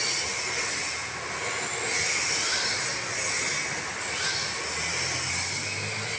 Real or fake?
real